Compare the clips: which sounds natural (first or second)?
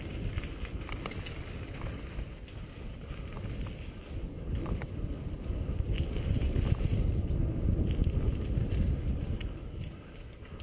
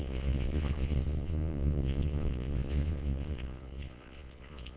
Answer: first